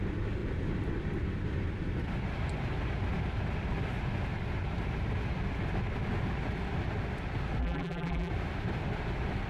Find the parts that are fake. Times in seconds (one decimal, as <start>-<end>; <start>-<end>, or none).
7.6-8.3